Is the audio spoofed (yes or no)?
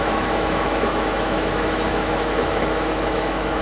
yes